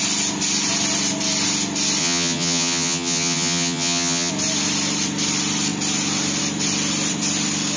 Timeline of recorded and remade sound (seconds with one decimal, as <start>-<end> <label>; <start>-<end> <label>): 0.0-2.0 recorded; 2.0-4.3 remade; 4.3-7.8 recorded